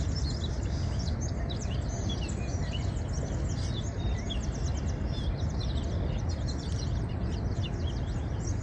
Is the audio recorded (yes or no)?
yes